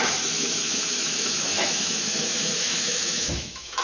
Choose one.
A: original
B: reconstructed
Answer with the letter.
B